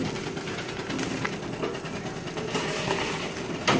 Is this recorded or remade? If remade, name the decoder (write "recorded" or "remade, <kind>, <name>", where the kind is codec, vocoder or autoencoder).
recorded